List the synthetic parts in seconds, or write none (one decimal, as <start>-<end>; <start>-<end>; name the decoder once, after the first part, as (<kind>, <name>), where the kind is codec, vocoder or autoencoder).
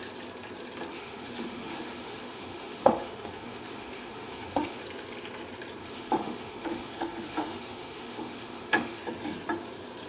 0.9-4.8 (autoencoder, DAC-VAE); 5.8-9.0